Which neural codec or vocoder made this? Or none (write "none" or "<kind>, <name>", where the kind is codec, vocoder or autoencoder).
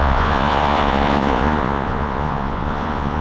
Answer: vocoder, Vocos